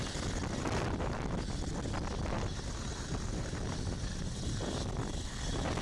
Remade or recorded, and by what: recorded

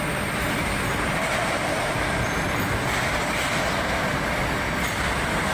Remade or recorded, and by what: recorded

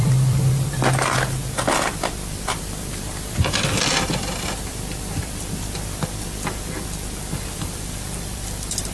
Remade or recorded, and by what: remade, vocoder, BigVGAN v2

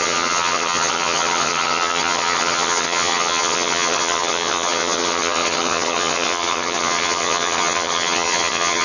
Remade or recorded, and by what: remade, vocoder, HiFi-GAN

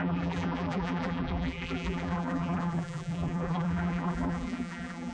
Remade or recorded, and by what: remade, vocoder, BigVGAN v2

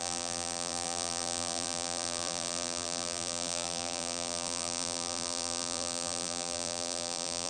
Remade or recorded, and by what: remade, vocoder, BigVGAN v2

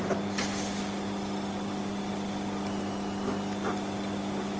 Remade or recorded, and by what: recorded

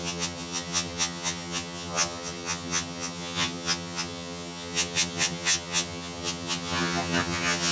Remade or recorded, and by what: remade, vocoder, HiFi-GAN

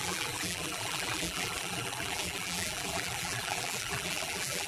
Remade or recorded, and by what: remade, vocoder, BigVGAN v2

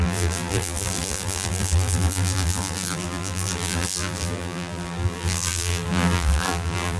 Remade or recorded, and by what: remade, vocoder, BigVGAN v2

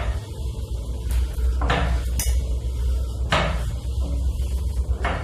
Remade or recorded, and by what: recorded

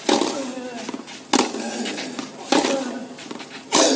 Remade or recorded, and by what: recorded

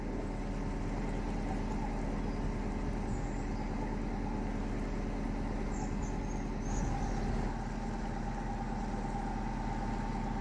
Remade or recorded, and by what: recorded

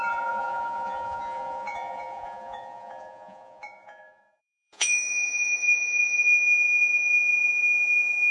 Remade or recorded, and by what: remade, vocoder, Vocos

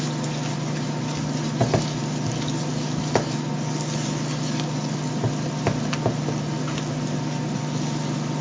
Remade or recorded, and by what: recorded